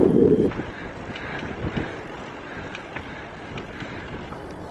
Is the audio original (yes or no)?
yes